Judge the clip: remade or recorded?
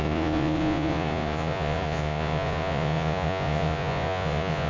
remade